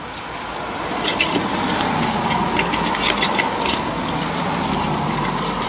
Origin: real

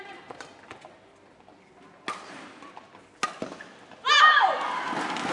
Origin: real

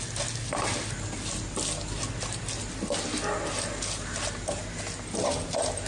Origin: real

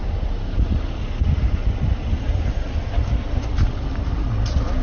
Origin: real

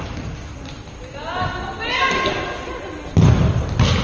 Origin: real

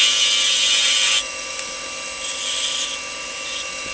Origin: real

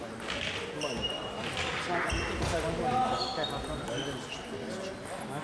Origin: real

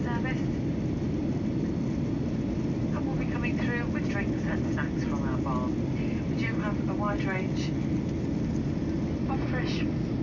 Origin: real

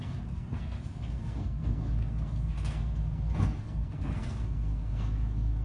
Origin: fake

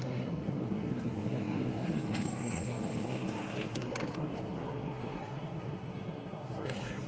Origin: fake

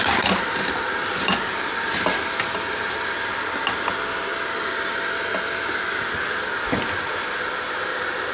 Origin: real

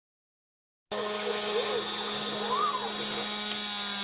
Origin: real